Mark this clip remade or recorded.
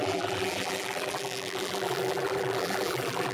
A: remade